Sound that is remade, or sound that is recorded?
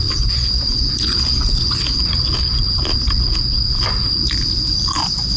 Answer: recorded